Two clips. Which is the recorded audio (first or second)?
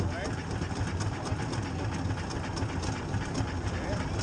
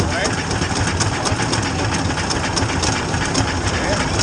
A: first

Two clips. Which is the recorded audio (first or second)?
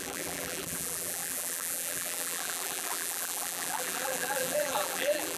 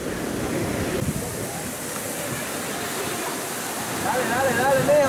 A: second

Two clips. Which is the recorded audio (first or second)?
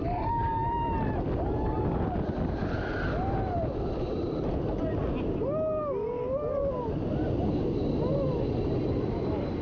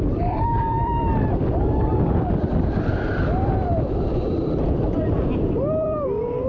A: first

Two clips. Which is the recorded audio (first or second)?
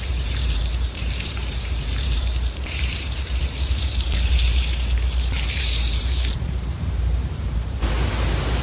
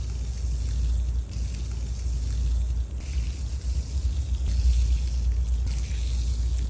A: second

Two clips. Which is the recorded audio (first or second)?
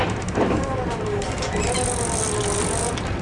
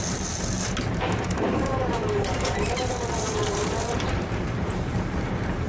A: first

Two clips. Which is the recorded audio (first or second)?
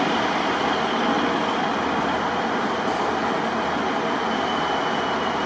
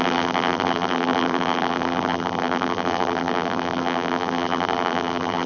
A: first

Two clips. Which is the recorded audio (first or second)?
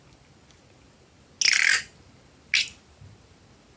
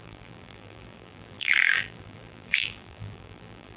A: first